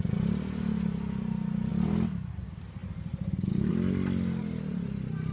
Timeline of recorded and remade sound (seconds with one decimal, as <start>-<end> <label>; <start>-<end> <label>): 0.0-5.3 recorded